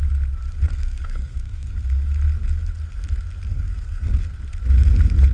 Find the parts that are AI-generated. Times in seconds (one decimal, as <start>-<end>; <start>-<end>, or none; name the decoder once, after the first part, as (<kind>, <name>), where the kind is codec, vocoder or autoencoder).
0.8-1.7 (codec, SNAC); 3.5-4.2